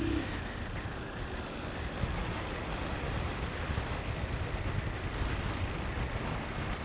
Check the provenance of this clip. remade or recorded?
recorded